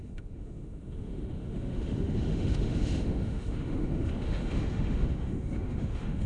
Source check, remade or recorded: remade